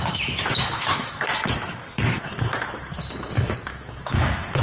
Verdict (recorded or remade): remade